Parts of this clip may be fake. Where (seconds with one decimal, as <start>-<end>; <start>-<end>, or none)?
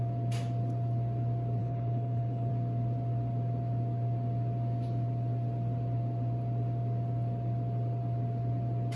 1.6-2.5